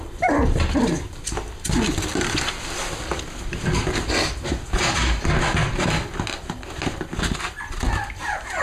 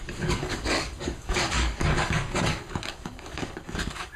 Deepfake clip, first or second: second